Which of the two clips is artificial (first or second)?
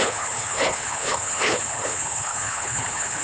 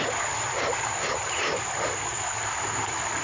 first